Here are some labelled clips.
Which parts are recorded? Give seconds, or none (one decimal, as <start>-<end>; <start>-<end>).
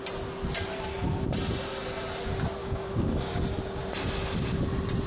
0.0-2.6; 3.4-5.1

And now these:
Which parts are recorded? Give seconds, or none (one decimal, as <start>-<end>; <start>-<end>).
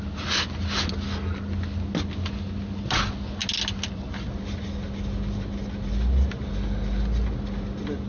0.0-8.1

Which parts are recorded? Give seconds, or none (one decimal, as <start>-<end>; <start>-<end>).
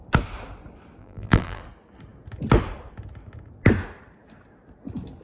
0.0-1.0; 1.6-5.2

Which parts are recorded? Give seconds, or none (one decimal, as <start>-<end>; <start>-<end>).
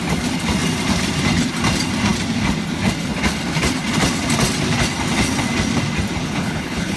0.0-6.2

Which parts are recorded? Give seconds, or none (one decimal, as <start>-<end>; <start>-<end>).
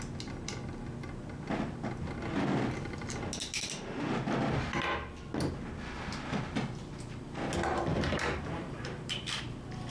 0.0-7.9; 9.4-9.9